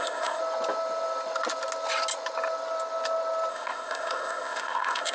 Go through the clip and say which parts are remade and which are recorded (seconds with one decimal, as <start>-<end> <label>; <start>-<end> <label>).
0.0-0.4 remade; 0.4-3.5 recorded; 3.5-5.1 remade